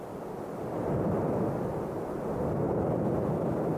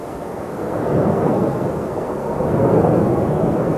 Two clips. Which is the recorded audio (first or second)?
first